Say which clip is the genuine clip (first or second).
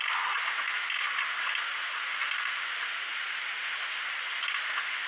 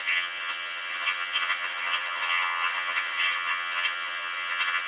first